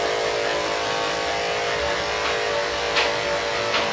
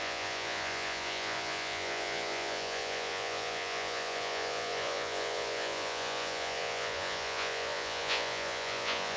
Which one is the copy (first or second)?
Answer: second